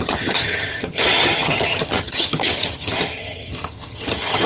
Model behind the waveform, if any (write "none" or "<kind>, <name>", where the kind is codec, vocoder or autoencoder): vocoder, HiFi-GAN